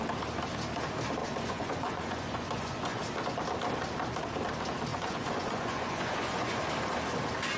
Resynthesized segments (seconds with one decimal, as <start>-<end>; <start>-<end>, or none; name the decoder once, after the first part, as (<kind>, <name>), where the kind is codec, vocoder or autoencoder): 1.2-3.0 (vocoder, Vocos); 4.9-6.6